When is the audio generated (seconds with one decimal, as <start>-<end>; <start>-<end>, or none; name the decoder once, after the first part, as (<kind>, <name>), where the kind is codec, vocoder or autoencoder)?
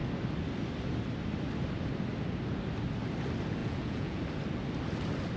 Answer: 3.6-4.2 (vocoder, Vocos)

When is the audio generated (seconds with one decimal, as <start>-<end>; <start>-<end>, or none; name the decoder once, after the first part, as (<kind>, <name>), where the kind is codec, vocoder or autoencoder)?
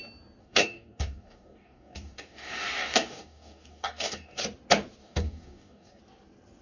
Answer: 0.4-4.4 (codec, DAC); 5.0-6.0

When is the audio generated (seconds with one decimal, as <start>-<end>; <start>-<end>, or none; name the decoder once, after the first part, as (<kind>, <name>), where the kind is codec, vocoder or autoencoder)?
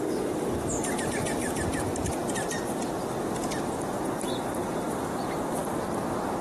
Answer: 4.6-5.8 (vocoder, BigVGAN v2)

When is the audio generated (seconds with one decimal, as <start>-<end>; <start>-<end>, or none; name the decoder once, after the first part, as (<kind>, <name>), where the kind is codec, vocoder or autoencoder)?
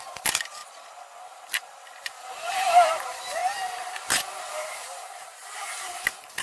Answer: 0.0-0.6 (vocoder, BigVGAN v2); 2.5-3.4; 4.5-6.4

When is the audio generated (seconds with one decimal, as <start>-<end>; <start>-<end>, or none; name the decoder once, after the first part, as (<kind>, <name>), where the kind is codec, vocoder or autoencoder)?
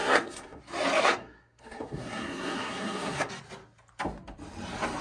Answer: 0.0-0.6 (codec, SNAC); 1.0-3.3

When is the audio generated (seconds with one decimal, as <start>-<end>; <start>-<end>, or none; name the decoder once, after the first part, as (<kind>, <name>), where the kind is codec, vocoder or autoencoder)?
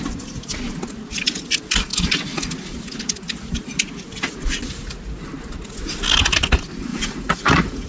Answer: 6.9-7.9 (vocoder, Vocos)